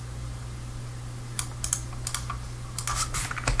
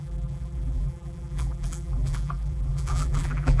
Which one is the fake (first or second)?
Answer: second